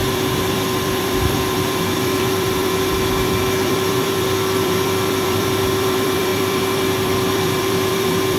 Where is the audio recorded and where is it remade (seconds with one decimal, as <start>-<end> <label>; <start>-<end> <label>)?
0.0-8.4 remade